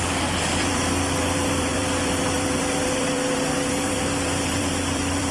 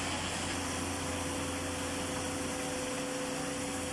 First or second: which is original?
second